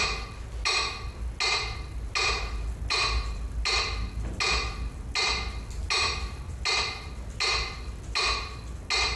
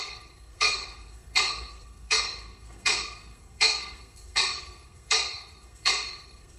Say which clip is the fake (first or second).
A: second